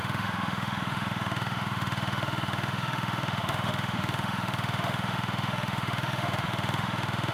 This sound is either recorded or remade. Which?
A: remade